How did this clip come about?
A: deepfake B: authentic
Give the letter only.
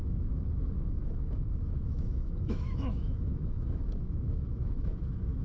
A